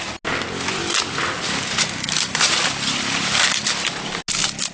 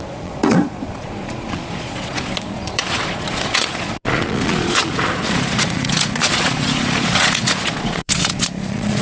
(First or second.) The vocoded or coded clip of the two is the second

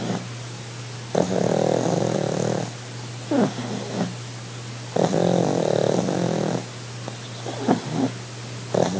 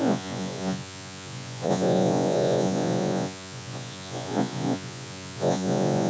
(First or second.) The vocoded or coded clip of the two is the second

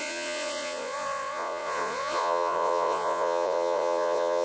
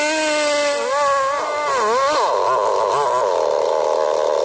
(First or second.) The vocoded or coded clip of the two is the first